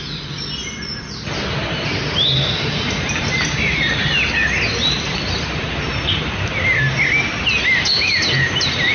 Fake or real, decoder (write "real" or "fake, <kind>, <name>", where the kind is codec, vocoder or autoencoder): real